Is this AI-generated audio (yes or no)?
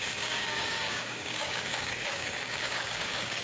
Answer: yes